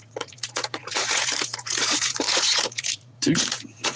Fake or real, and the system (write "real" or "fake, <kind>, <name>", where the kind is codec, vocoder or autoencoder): fake, vocoder, Vocos